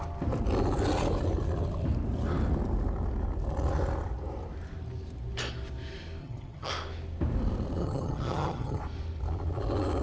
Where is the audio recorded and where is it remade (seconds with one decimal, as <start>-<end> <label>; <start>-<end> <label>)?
0.0-6.2 recorded; 6.2-6.7 remade; 6.7-7.8 recorded; 7.8-8.8 remade; 8.8-10.0 recorded